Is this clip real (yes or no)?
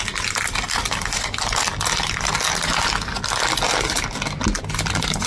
yes